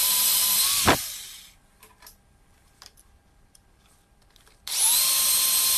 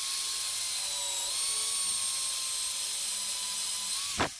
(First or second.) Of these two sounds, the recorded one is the second